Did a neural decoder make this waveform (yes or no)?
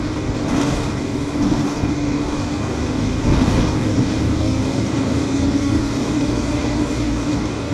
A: yes